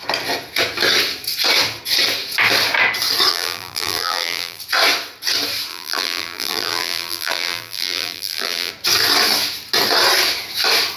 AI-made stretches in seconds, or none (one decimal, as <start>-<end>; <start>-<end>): 3.3-4.6; 5.7-8.7